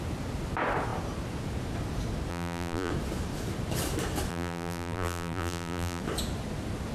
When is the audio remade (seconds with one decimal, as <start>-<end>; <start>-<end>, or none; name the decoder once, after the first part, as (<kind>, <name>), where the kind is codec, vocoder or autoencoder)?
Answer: 2.3-2.9 (vocoder, BigVGAN v2); 4.3-6.0